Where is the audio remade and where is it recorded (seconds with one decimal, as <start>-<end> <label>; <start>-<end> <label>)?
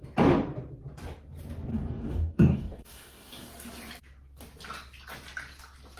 0.0-1.7 recorded; 1.7-3.5 remade; 3.5-6.0 recorded